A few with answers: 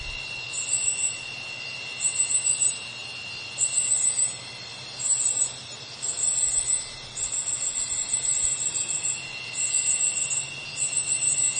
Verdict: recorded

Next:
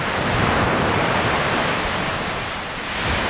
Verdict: remade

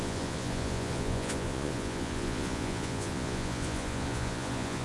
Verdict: remade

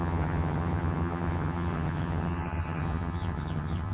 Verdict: remade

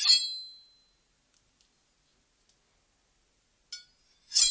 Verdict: recorded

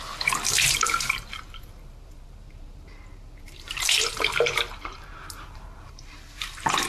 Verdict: remade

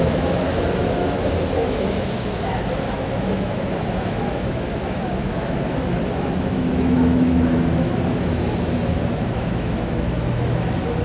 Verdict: remade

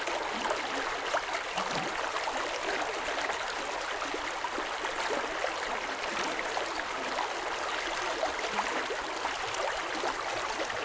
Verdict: recorded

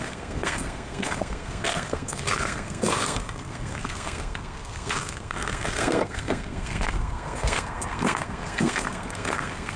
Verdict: remade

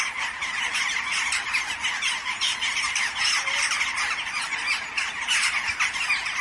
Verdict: recorded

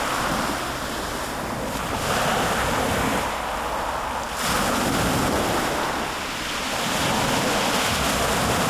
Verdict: recorded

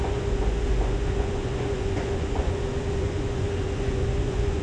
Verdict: remade